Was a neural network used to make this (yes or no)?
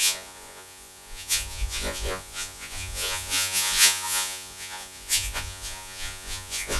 yes